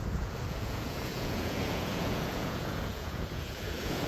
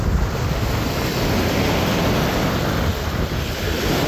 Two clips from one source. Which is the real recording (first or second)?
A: second